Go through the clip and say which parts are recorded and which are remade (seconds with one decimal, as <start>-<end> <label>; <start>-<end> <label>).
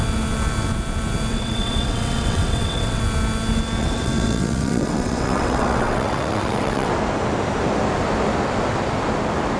0.0-1.3 recorded; 1.3-3.0 remade; 3.0-3.8 recorded; 3.8-6.9 remade; 6.9-9.6 recorded